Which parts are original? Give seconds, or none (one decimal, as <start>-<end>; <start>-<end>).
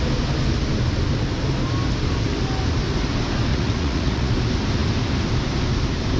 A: 0.0-3.5; 4.3-6.2